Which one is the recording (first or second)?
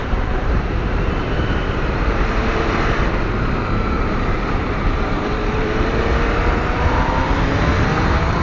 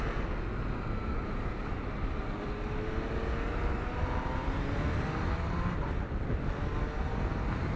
second